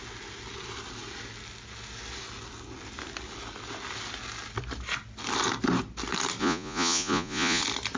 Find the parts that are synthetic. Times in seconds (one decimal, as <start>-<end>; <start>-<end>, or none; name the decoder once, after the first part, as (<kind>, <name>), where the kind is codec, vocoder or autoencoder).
6.4-7.6 (vocoder, Vocos)